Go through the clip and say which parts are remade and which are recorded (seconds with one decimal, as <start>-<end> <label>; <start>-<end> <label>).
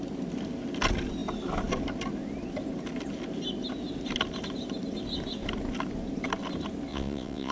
0.0-6.9 recorded; 6.9-7.5 remade